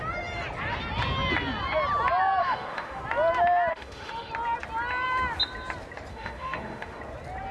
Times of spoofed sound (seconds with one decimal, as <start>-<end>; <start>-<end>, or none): 2.4-3.0; 3.7-4.3; 6.1-7.0